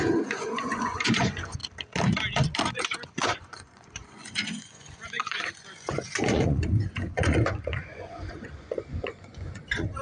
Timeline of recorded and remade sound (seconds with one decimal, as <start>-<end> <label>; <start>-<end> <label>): 0.0-1.6 remade; 1.6-2.7 recorded; 2.7-10.0 remade